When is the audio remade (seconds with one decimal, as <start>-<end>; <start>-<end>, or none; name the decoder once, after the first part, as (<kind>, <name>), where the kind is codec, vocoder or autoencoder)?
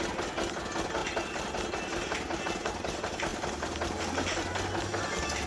3.3-4.0 (vocoder, BigVGAN v2)